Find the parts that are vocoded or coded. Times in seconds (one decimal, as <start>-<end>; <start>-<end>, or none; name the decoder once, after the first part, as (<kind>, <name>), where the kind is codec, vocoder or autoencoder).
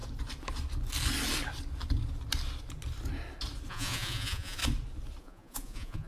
3.7-4.6 (vocoder, Vocos); 5.2-6.1